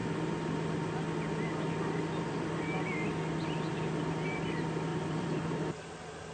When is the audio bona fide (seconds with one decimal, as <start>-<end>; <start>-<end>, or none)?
0.0-4.9; 5.8-6.3